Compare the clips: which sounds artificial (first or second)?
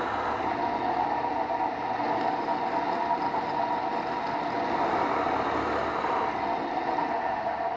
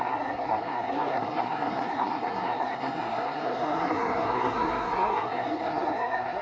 second